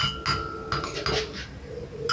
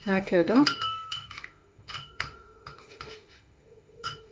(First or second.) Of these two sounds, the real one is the first